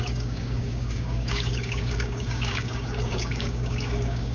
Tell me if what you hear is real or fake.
fake